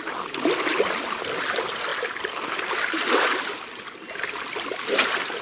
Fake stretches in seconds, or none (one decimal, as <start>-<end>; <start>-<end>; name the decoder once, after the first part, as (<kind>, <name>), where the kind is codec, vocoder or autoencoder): none